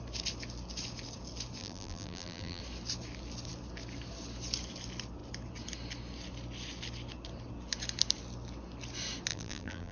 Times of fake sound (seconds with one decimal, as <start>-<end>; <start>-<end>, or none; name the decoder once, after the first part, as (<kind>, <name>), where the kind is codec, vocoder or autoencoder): 1.6-2.6 (vocoder, BigVGAN v2); 9.3-9.9